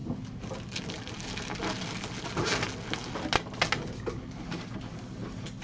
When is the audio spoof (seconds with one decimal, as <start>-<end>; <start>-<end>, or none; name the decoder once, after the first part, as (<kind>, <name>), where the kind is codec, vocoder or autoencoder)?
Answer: none